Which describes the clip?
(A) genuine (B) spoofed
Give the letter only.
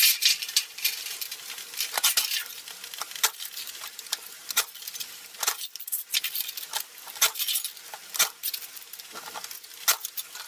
A